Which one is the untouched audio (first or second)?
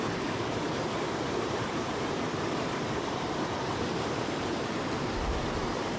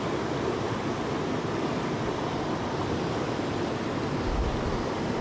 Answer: second